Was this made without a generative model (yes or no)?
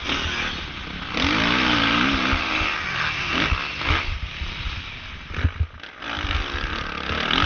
yes